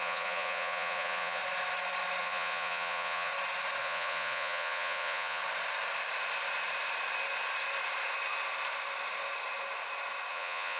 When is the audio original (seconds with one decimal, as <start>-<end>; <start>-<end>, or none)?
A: 1.4-2.2; 3.3-3.8; 5.4-10.3

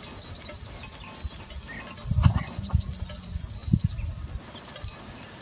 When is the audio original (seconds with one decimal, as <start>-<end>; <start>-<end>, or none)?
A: 0.0-2.2; 2.7-5.4